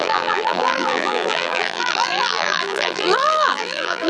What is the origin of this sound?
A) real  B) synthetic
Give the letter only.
B